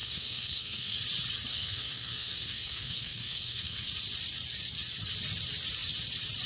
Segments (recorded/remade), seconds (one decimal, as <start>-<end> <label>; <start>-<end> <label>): 0.0-1.0 remade; 1.0-1.5 recorded; 1.5-3.9 remade; 3.9-6.5 recorded